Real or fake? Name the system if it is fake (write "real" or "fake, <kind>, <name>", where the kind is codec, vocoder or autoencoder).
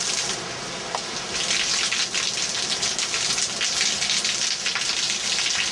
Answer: real